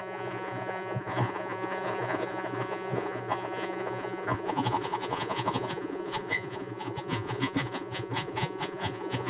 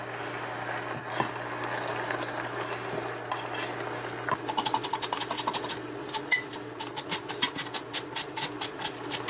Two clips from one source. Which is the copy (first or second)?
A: first